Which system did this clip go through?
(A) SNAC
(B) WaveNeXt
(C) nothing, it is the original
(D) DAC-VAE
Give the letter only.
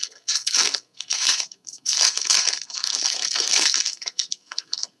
A